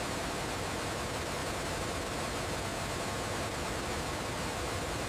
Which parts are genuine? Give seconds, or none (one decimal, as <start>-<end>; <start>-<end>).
0.0-5.1